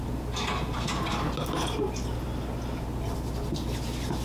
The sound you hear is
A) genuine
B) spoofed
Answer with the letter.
A